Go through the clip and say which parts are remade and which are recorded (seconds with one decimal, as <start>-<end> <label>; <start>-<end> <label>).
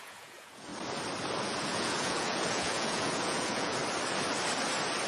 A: 0.0-0.7 remade; 0.7-1.4 recorded; 1.4-3.8 remade; 3.8-5.1 recorded